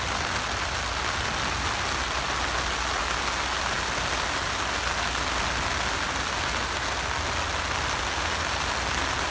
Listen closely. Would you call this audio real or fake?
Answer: real